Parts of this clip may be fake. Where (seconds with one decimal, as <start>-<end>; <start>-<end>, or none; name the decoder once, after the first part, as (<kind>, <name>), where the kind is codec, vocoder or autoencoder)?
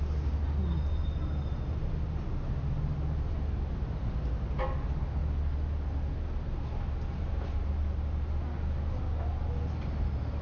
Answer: none